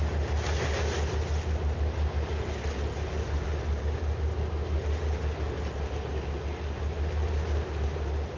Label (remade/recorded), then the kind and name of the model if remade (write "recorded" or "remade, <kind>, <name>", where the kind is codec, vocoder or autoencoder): recorded